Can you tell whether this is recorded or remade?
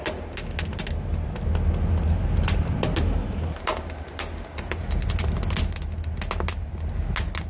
recorded